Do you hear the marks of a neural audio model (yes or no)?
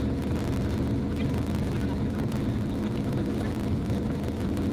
no